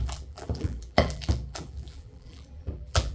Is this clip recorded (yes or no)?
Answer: no